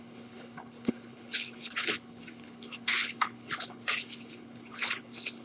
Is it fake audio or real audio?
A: fake